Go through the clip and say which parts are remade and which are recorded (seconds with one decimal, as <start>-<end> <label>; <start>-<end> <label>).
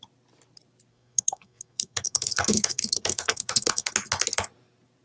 0.0-0.9 recorded; 0.9-3.9 remade; 3.9-5.0 recorded